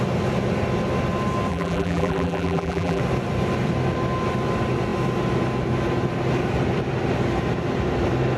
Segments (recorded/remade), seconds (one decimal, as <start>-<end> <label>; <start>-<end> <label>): 0.0-1.5 recorded; 1.5-3.0 remade; 3.0-8.4 recorded